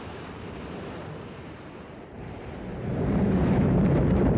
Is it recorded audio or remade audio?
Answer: remade